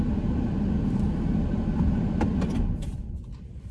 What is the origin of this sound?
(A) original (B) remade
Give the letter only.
A